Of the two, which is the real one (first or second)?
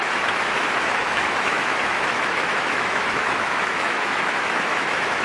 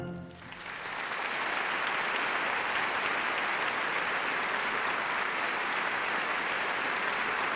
second